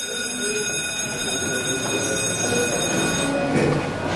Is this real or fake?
real